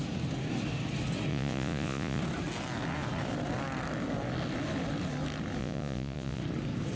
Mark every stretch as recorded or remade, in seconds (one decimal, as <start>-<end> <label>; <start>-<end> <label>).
0.0-1.3 recorded; 1.3-2.2 remade; 2.2-5.6 recorded; 5.6-6.4 remade; 6.4-7.0 recorded